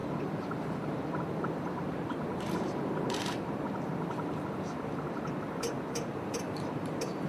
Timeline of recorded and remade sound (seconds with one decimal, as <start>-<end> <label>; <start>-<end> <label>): 0.0-7.3 remade